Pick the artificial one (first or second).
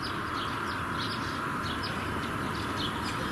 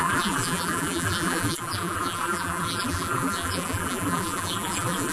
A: second